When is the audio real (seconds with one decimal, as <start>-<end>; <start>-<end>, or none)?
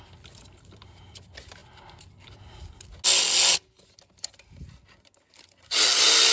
0.0-6.3